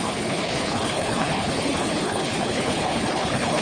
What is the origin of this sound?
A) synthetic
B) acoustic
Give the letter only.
A